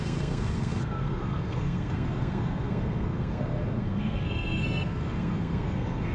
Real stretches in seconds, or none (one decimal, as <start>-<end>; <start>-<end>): none